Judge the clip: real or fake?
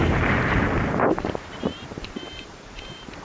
fake